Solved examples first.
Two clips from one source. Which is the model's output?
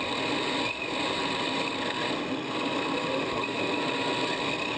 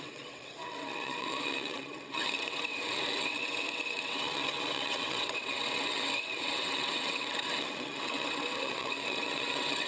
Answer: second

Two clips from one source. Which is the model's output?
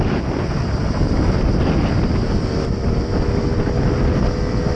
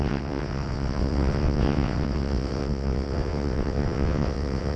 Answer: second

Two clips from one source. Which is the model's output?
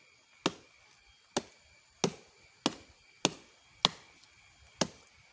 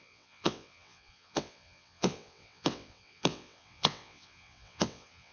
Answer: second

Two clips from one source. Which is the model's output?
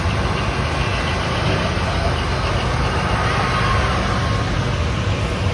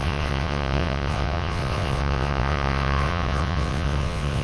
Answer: second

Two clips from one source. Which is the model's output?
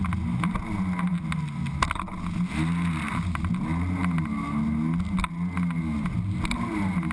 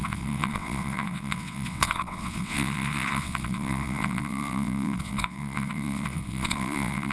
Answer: second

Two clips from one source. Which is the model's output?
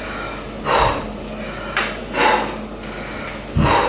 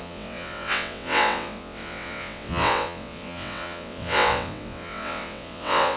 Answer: second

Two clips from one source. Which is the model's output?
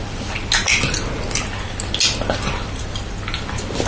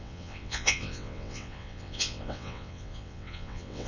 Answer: second